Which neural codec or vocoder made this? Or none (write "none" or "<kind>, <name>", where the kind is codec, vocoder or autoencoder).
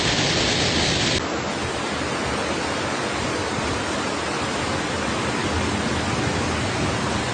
none